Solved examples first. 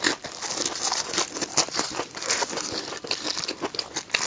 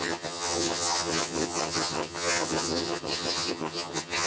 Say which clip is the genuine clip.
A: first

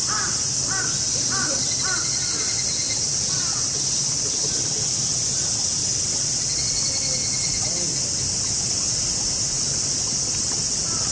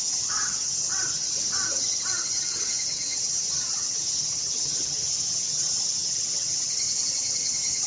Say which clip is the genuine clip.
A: first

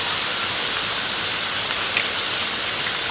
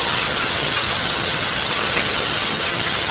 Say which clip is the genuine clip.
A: first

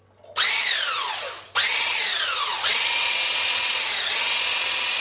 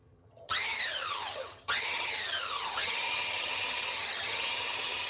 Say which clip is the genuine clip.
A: first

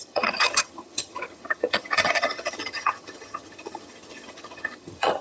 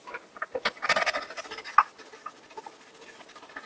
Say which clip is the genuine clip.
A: second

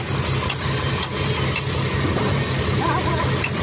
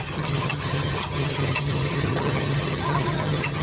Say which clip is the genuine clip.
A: first